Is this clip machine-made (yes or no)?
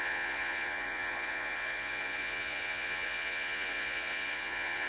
yes